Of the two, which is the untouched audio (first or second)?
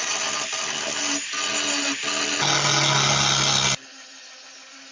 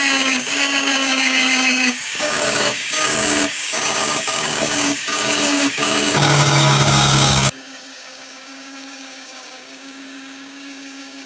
first